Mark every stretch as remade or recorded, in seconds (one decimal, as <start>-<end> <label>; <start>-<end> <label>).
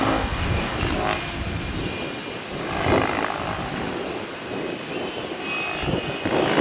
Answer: 0.0-0.8 remade; 0.8-6.6 recorded